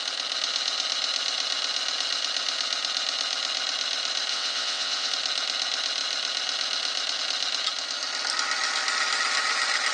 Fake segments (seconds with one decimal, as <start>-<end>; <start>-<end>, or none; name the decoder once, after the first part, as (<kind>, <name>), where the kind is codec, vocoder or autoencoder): 4.3-5.1 (vocoder, WaveNeXt)